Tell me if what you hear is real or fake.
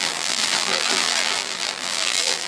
fake